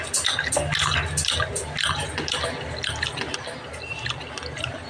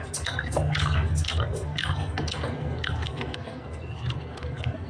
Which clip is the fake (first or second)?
second